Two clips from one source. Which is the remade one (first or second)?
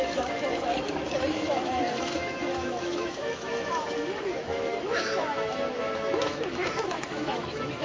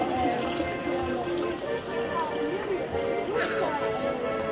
first